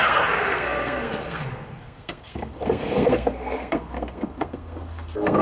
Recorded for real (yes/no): no